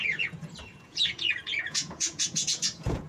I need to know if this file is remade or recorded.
remade